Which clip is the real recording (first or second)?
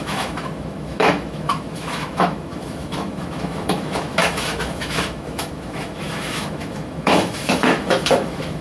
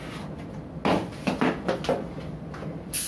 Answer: second